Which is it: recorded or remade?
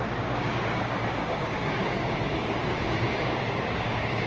remade